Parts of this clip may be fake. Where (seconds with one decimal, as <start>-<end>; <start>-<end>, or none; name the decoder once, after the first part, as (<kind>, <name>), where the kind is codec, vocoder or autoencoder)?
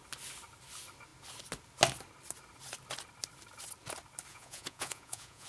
4.3-5.5 (vocoder, Vocos)